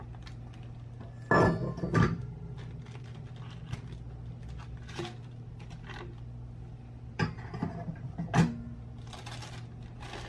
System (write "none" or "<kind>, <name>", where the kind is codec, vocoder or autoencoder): none